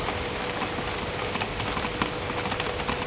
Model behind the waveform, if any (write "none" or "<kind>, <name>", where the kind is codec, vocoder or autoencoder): none